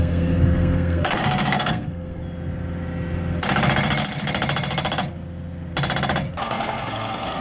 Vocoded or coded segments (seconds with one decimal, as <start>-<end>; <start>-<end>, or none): 0.0-2.2; 6.4-7.4